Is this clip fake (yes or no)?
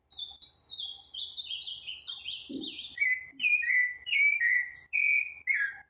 no